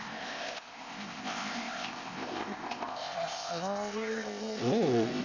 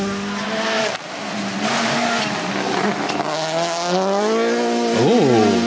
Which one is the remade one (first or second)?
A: first